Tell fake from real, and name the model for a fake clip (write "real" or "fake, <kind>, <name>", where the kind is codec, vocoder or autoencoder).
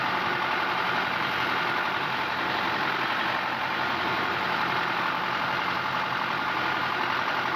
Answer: real